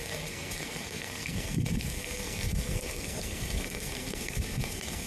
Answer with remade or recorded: remade